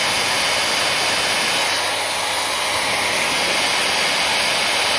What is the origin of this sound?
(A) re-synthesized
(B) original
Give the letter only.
B